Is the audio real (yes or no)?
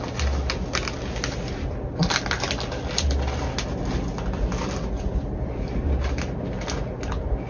yes